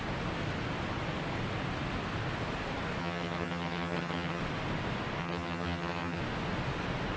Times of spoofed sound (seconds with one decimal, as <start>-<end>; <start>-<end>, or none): 3.0-4.4; 5.2-6.2